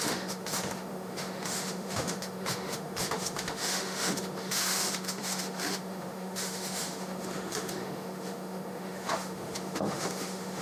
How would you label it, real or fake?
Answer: fake